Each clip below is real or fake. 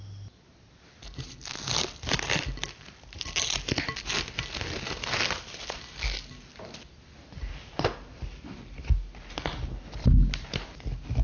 real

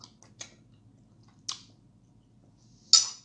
real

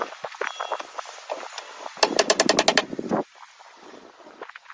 real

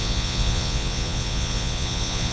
fake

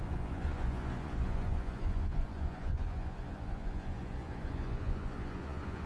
fake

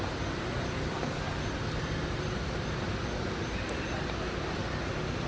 real